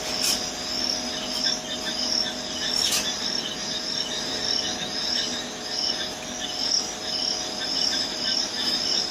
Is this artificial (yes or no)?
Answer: no